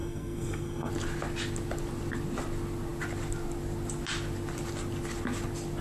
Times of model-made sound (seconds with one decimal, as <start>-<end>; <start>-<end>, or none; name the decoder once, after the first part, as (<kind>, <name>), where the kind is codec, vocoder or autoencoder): 0.0-0.9 (codec, SNAC)